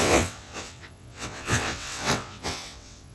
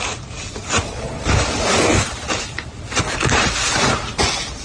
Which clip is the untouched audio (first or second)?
second